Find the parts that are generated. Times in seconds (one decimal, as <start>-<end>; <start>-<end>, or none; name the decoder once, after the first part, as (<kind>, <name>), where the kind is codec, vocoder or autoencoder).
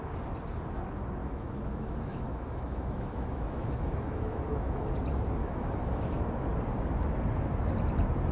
1.2-4.9 (autoencoder, DAC-VAE); 5.4-6.2